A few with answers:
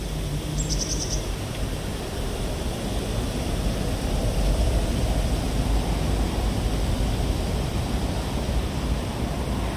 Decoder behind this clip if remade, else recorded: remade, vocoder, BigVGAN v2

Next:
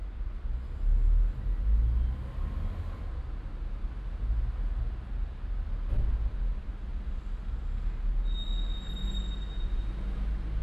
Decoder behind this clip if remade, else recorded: recorded